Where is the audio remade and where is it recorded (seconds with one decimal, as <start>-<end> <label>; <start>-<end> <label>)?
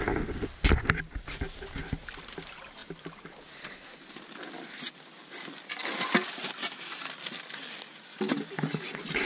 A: 0.0-9.3 recorded